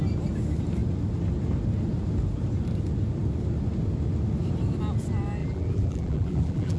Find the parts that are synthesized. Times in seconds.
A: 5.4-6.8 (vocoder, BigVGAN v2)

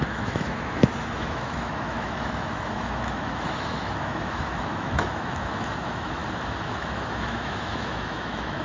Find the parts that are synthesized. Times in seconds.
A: 0.0-6.2 (autoencoder, DAC-VAE); 6.7-8.6

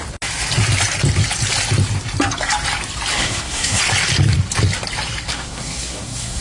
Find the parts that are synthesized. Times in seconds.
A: 3.1-3.8 (codec, SNAC); 5.3-6.4

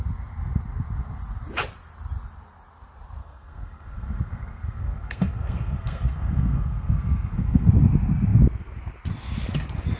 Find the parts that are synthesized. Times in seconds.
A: 3.2-7.7 (codec, SNAC)